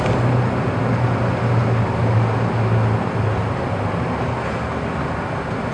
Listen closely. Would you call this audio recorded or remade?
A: recorded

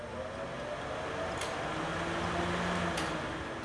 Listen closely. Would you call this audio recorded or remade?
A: recorded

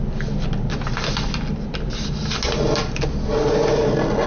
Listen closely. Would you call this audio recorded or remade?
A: recorded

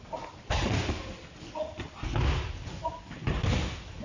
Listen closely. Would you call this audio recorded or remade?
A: recorded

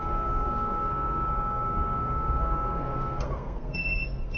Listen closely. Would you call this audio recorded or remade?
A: remade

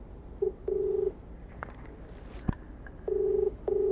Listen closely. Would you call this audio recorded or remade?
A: recorded